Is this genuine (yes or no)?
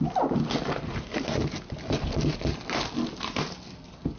yes